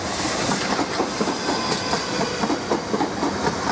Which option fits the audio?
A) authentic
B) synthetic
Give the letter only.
A